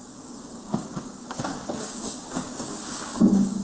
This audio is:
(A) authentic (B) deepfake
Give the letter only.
B